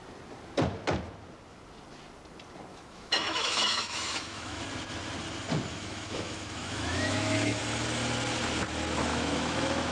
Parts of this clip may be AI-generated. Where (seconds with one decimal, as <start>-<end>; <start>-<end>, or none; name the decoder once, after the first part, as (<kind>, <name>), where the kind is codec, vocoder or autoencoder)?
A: 2.7-4.6 (autoencoder, DAC-VAE); 5.7-7.6; 9.1-9.9